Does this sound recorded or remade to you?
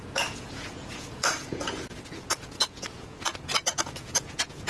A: remade